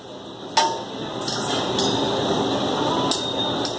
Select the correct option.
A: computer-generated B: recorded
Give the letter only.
B